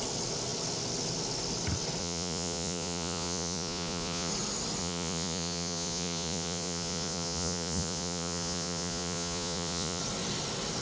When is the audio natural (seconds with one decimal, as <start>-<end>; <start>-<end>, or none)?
0.0-2.0; 4.3-4.8; 10.0-10.8